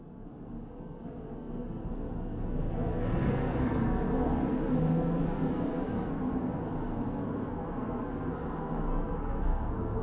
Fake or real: fake